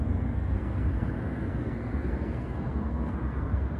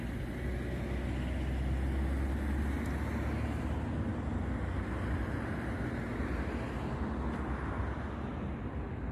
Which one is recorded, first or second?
second